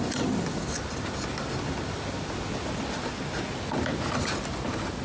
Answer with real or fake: real